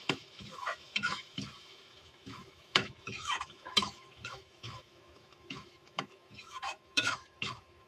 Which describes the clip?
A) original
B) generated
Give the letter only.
B